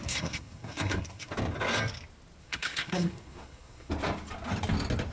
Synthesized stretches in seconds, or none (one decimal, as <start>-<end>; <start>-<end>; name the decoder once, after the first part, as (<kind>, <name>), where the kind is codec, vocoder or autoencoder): 0.0-1.3 (codec, SNAC); 2.4-3.9